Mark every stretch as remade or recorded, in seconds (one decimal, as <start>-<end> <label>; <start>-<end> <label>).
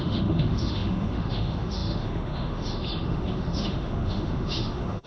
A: 0.0-5.1 remade